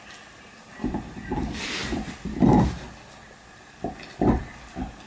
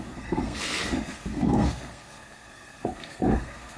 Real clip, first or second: first